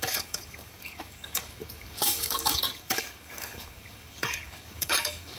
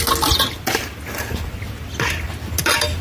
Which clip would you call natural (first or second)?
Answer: second